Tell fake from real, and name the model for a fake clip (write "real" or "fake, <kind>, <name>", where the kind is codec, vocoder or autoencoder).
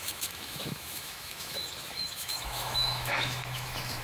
fake, autoencoder, DAC-VAE